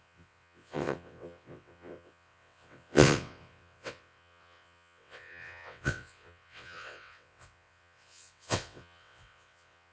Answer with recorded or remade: remade